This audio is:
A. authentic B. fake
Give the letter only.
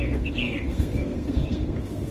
B